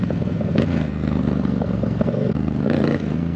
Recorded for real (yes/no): no